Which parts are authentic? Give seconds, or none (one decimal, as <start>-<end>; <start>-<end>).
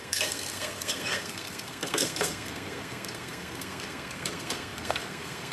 none